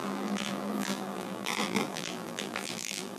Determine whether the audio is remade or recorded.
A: remade